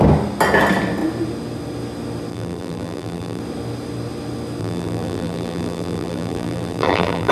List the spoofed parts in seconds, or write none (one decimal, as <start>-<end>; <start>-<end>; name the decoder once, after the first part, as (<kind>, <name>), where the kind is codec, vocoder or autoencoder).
2.3-3.4 (vocoder, BigVGAN v2); 4.6-7.3